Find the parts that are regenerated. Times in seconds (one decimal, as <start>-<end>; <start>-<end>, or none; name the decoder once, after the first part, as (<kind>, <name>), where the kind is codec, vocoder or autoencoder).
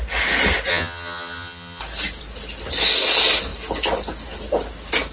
0.7-1.8 (vocoder, HiFi-GAN)